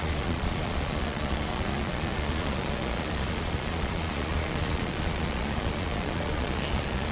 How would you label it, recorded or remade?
remade